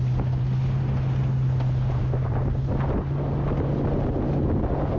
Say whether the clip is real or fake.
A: real